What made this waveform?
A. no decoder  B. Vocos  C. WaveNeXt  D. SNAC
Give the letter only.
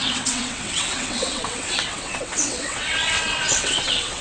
C